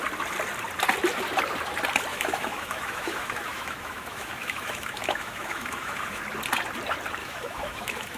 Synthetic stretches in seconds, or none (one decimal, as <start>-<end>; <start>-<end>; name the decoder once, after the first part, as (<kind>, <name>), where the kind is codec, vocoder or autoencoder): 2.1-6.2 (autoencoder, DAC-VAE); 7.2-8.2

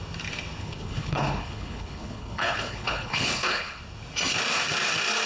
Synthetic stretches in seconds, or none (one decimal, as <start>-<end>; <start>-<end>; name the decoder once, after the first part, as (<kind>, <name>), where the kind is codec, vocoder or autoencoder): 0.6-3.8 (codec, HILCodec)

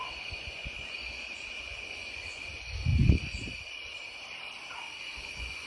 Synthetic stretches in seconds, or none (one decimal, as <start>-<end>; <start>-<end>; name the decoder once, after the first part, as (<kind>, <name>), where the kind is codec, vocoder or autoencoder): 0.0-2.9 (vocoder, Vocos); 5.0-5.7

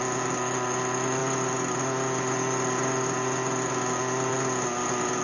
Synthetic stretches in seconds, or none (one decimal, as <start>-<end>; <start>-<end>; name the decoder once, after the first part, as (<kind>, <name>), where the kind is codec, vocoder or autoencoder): none

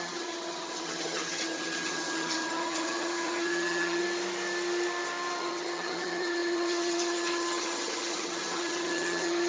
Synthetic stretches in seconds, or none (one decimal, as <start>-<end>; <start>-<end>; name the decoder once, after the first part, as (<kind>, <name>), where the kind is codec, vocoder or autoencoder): 0.0-4.0 (vocoder, HiFi-GAN); 5.4-9.5

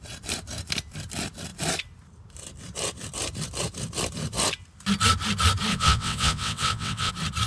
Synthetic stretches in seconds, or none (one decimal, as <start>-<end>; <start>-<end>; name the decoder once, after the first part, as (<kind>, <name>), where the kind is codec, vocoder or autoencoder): 5.7-7.1 (vocoder, WaveNeXt)

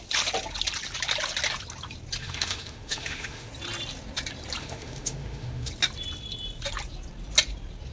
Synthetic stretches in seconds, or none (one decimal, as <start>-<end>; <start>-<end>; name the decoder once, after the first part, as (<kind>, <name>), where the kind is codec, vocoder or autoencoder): 2.2-3.5 (autoencoder, DAC-VAE); 4.6-5.7

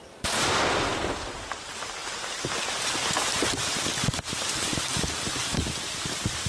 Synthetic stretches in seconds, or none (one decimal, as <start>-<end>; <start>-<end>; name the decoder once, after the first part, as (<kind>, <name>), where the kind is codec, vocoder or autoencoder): 0.0-2.0 (vocoder, BigVGAN v2); 3.5-4.9; 5.4-6.5